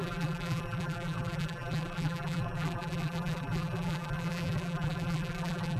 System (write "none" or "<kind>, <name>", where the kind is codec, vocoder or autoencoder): vocoder, BigVGAN v2